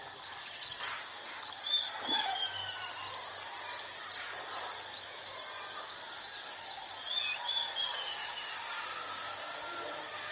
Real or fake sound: real